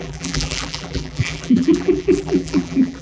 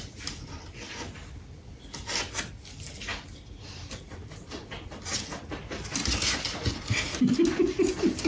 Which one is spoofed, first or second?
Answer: first